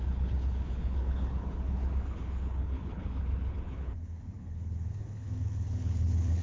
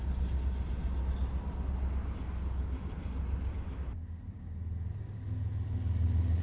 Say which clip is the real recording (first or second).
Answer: second